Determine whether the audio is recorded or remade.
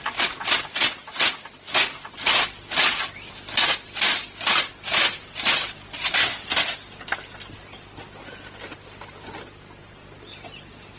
recorded